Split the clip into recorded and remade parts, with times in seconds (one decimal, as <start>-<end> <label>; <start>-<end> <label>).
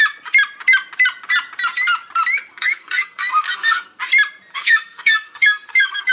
0.0-2.5 recorded; 2.5-4.0 remade; 4.0-4.5 recorded; 4.5-6.1 remade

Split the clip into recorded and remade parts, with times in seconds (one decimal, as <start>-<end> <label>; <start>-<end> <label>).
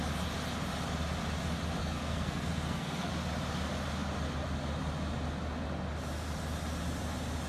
0.0-1.8 recorded; 1.8-3.1 remade; 3.1-7.5 recorded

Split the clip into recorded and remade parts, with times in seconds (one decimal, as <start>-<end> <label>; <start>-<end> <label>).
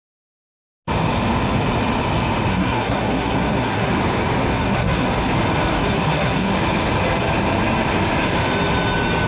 0.0-2.5 recorded; 2.5-3.9 remade; 3.9-4.5 recorded; 4.5-5.1 remade; 5.1-5.8 recorded; 5.8-6.5 remade; 6.5-9.3 recorded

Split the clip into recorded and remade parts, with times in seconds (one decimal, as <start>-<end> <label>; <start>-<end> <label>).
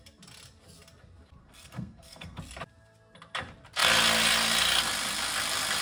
0.0-1.4 recorded; 1.4-2.4 remade; 2.4-5.8 recorded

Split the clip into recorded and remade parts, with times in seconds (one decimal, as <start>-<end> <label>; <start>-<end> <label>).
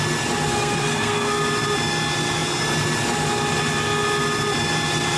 0.0-0.5 recorded; 0.5-1.4 remade; 1.4-5.2 recorded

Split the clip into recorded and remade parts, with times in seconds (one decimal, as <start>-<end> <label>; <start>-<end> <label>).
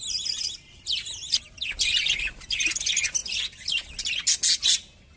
0.0-5.2 recorded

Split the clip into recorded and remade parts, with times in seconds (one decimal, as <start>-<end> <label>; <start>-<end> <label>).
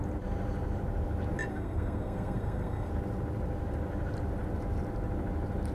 0.0-1.5 recorded; 1.5-2.9 remade; 2.9-5.7 recorded